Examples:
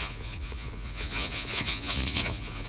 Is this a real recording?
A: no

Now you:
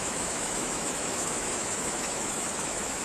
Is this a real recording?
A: no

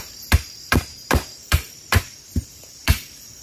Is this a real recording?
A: no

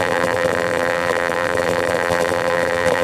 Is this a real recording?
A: no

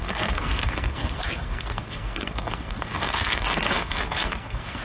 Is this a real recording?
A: no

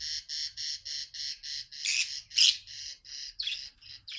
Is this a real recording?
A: yes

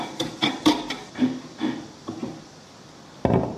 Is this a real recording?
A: yes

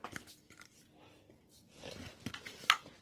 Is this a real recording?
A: yes